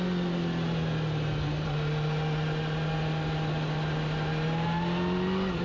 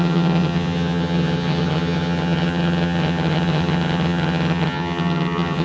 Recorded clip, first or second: first